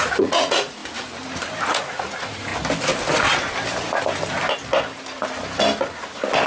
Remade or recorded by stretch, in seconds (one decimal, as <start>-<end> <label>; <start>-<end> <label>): 0.0-0.8 remade; 0.8-1.6 recorded; 1.6-2.5 remade; 2.5-6.5 recorded